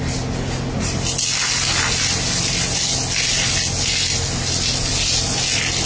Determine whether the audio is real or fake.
real